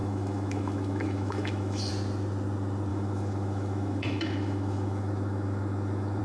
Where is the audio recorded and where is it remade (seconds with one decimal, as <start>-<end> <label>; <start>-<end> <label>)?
0.0-1.9 remade; 1.9-2.9 recorded; 2.9-6.2 remade